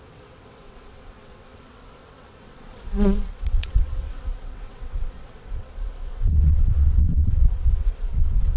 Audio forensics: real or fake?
fake